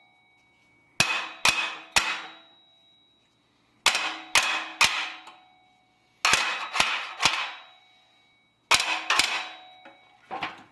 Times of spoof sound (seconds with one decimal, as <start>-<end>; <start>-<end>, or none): none